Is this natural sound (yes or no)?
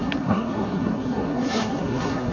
no